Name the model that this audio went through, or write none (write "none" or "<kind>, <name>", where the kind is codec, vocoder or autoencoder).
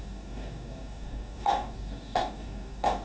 codec, DAC